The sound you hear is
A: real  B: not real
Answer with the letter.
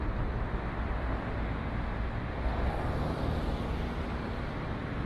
B